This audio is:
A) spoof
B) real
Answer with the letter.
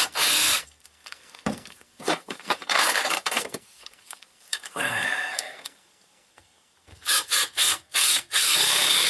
A